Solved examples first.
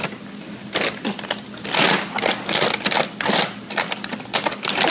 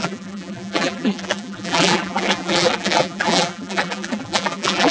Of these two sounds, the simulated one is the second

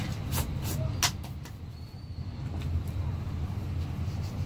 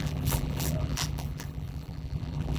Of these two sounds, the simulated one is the second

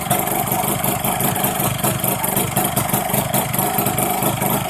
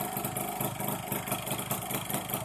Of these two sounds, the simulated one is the first